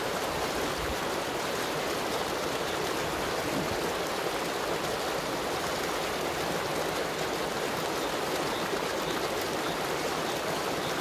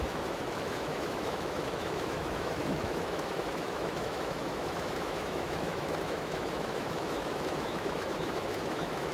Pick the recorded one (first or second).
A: first